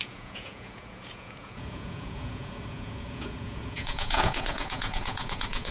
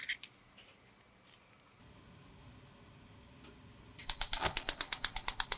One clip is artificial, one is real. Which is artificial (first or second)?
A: first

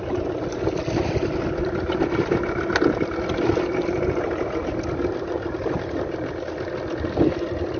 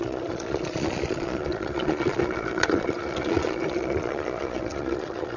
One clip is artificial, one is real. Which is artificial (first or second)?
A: second